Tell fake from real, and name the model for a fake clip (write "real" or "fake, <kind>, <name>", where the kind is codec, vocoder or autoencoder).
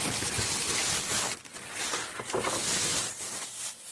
real